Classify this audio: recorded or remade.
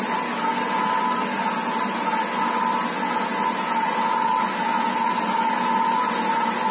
recorded